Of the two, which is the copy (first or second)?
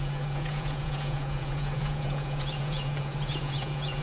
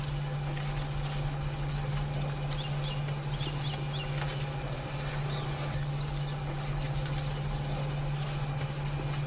first